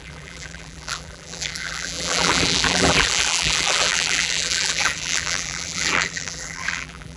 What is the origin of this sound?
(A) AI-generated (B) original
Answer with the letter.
A